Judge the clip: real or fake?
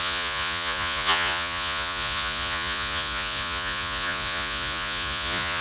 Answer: fake